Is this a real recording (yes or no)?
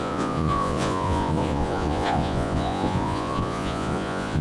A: no